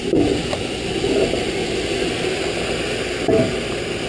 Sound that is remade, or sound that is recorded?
recorded